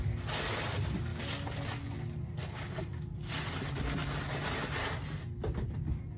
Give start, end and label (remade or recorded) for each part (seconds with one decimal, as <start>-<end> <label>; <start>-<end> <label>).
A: 0.0-6.2 recorded